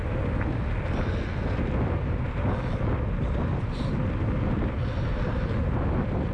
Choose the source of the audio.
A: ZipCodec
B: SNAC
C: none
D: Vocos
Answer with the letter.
C